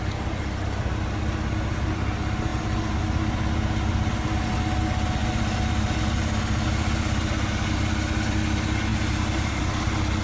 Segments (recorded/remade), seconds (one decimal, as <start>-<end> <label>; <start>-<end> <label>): 0.0-10.2 recorded